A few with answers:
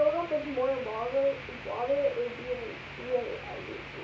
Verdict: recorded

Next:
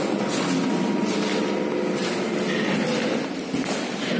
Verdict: recorded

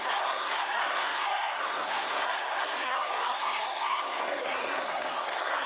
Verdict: remade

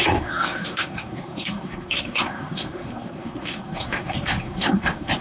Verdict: remade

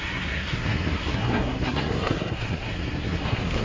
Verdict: remade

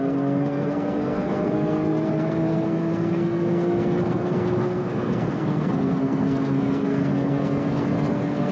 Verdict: remade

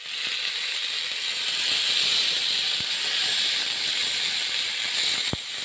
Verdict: recorded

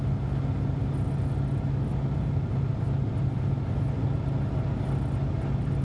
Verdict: recorded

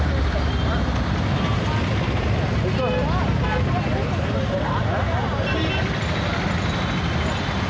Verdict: recorded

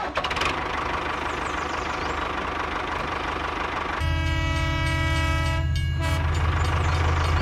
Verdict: recorded